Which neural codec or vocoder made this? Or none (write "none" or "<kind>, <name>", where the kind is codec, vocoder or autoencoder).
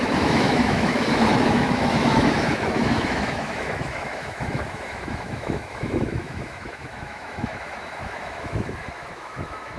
autoencoder, DAC-VAE